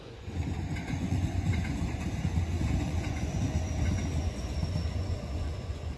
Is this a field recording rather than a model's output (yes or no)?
no